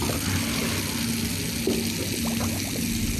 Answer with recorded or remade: recorded